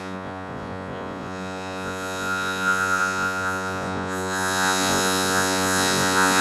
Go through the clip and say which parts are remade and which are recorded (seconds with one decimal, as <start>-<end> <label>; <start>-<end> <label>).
0.0-6.4 remade